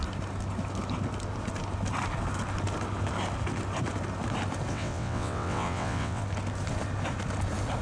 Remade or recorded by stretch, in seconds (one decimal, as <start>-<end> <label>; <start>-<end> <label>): 0.0-4.7 recorded; 4.7-6.2 remade; 6.2-7.8 recorded